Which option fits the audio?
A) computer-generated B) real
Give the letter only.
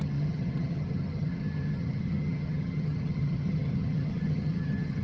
A